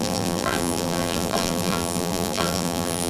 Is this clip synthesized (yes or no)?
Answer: yes